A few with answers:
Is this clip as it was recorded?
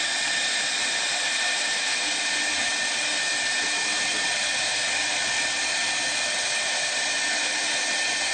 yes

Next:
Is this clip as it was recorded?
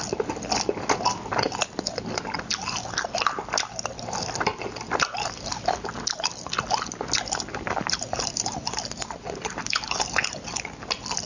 yes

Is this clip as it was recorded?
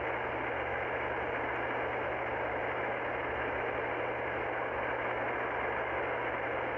yes